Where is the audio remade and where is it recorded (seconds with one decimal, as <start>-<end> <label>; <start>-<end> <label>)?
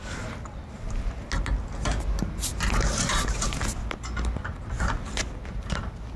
0.0-6.2 recorded